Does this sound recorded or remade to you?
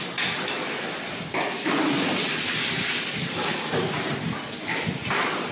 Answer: recorded